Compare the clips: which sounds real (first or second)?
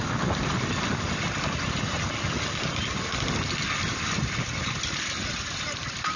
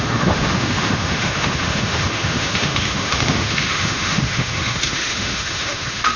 first